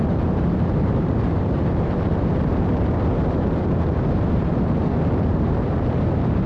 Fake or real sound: fake